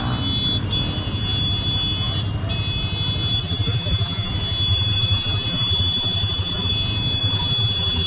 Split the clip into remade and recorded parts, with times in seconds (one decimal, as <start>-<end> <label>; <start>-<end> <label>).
0.0-3.4 recorded; 3.4-4.3 remade; 4.3-4.7 recorded; 4.7-6.7 remade; 6.7-7.2 recorded; 7.2-8.1 remade